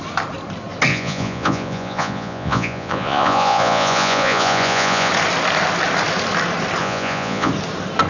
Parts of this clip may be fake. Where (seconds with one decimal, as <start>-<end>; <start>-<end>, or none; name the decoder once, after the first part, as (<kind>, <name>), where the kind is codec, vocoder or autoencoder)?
0.9-5.1 (vocoder, Vocos); 6.8-7.5

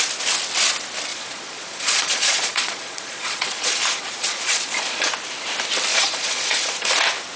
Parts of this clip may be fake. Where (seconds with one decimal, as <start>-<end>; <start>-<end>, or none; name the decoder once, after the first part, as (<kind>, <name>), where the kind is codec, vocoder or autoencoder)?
1.1-5.1 (vocoder, Vocos); 5.9-6.9